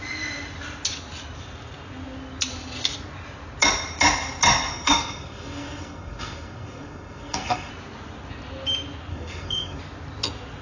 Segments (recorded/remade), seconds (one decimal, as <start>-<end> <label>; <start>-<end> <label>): 0.0-4.7 recorded; 4.7-7.7 remade; 7.7-9.1 recorded; 9.1-9.8 remade; 9.8-10.6 recorded